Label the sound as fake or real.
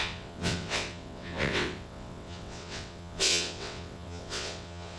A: fake